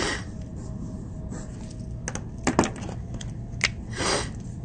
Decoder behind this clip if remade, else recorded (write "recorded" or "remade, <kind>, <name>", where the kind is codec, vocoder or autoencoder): recorded